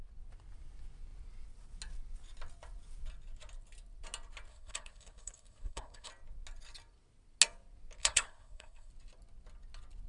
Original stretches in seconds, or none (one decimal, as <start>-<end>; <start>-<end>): 0.0-4.5; 6.1-8.0; 8.9-10.1